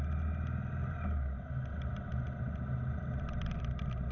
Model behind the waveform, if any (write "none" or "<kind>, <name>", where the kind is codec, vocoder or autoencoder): none